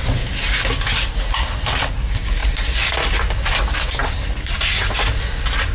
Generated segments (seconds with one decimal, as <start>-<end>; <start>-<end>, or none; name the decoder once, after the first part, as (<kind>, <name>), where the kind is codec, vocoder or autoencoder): none